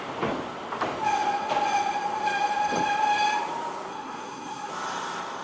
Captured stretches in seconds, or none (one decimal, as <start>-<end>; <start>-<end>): 0.0-3.9; 4.7-5.4